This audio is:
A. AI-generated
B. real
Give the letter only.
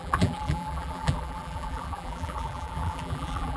A